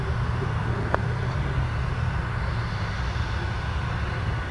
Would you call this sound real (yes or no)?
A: yes